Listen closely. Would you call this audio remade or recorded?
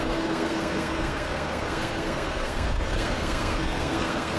remade